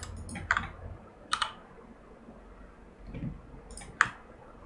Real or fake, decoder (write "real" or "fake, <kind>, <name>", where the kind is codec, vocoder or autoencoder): real